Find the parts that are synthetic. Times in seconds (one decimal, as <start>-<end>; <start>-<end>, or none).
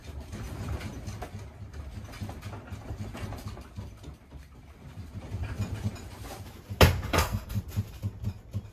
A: 7.1-7.6